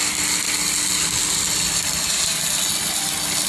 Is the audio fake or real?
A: real